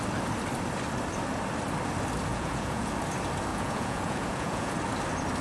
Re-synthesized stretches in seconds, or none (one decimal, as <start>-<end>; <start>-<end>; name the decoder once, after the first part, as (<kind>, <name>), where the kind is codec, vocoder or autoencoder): 2.3-2.9 (vocoder, Vocos); 3.5-4.7